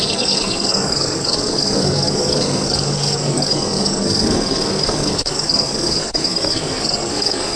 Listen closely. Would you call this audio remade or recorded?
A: remade